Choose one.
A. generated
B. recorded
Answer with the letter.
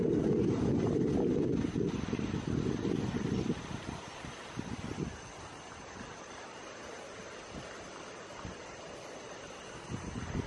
B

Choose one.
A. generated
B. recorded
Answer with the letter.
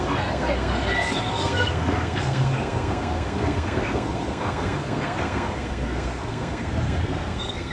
A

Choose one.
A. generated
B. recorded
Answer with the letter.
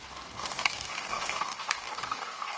A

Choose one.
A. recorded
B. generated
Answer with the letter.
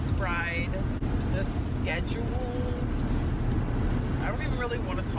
A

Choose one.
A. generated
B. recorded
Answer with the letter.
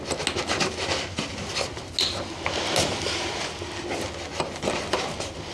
B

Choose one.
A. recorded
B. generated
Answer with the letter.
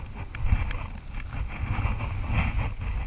A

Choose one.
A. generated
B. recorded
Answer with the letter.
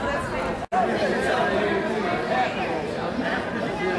B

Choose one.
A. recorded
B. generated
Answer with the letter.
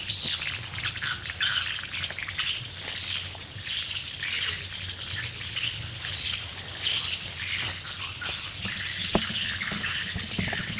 A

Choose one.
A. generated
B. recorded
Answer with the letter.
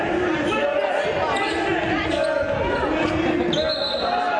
B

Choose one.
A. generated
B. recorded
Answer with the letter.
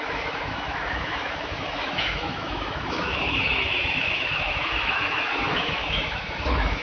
A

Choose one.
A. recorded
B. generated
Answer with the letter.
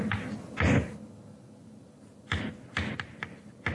A